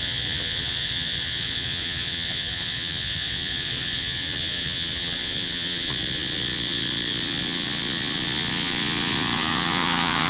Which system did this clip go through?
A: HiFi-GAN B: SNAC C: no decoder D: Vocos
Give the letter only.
D